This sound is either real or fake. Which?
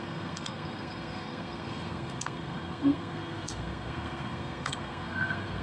fake